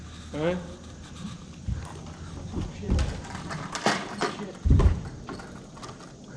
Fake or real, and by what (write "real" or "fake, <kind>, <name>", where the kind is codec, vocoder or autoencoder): real